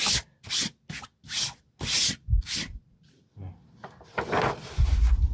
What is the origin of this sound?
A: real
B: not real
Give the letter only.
A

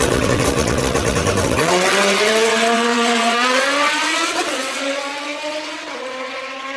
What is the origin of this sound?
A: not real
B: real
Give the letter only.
A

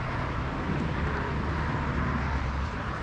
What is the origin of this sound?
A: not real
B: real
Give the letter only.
B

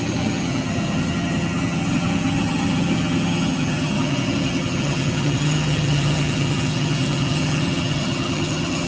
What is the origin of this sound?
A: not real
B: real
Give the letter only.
A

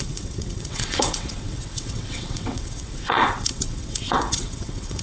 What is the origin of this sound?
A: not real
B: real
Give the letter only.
A